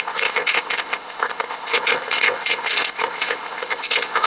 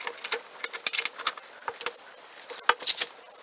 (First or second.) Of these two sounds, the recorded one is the second